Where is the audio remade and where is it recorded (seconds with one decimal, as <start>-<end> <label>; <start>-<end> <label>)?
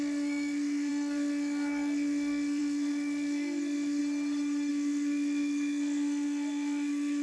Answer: 0.0-4.0 remade; 4.0-4.7 recorded; 4.7-7.2 remade